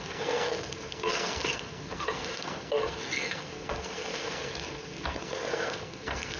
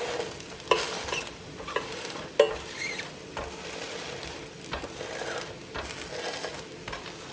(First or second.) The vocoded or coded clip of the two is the first